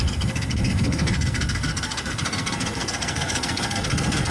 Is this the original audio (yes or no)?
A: no